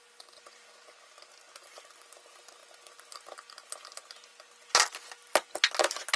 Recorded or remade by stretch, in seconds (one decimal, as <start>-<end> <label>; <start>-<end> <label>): 0.0-6.2 recorded